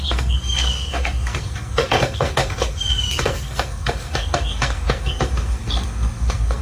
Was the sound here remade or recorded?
remade